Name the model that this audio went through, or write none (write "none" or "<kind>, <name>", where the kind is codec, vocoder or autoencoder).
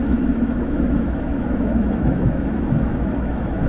autoencoder, DAC-VAE